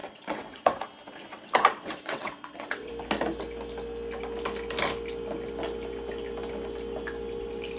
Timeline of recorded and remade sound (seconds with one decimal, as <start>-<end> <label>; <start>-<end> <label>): 0.0-0.8 remade; 0.8-1.3 recorded; 1.3-2.9 remade; 2.9-7.8 recorded

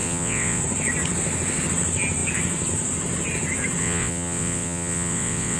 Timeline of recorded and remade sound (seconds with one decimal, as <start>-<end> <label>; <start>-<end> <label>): 0.0-0.6 remade; 0.6-3.8 recorded; 3.8-5.6 remade

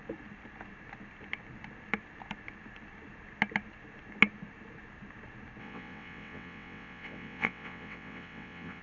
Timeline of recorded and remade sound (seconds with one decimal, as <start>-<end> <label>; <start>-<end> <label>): 0.0-5.6 recorded; 5.6-8.8 remade